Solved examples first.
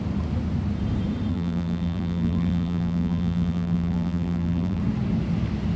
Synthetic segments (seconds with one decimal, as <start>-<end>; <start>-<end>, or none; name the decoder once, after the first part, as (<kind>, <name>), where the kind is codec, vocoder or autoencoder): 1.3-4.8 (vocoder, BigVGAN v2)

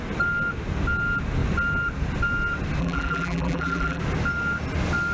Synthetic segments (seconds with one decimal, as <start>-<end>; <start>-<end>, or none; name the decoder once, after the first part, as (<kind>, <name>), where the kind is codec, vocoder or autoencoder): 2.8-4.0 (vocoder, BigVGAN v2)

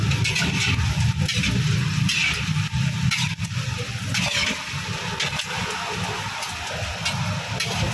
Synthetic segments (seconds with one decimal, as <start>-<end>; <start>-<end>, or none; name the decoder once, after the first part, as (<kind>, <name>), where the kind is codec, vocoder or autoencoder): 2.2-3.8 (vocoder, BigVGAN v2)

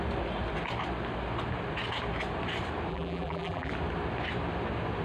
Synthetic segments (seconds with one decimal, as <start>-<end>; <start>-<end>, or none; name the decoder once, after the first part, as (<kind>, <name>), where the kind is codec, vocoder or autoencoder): 2.9-3.7 (vocoder, BigVGAN v2)

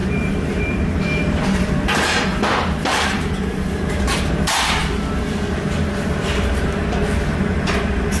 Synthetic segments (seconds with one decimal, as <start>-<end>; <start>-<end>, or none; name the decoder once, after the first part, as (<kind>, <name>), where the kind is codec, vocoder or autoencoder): 0.0-4.8 (vocoder, BigVGAN v2); 5.5-6.8; 7.3-8.2